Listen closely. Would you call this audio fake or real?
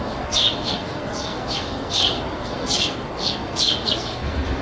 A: fake